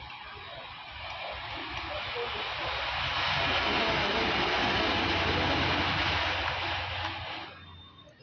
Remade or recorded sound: recorded